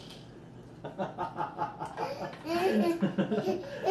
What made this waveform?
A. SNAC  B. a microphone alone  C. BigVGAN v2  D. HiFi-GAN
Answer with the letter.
B